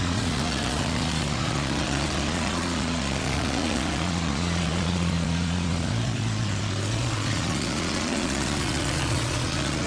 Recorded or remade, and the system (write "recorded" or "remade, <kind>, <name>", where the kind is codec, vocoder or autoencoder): remade, vocoder, Vocos